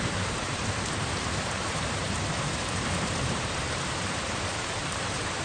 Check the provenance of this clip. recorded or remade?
remade